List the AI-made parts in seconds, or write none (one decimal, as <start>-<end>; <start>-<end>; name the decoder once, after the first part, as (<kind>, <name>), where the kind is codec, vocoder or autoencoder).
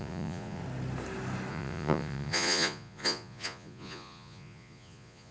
0.0-0.6 (vocoder, Vocos); 1.5-5.3